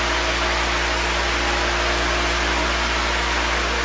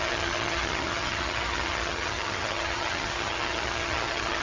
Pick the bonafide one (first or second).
first